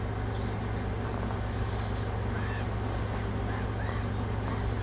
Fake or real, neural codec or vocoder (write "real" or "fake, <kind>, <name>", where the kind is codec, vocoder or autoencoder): real